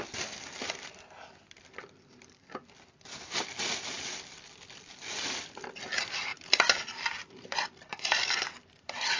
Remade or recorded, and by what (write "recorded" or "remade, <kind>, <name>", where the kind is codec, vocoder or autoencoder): remade, vocoder, BigVGAN v2